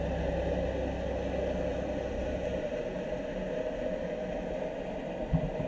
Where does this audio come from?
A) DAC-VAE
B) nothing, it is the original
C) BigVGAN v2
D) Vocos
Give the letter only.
B